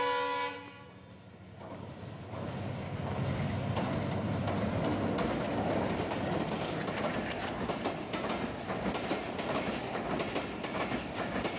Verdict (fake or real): real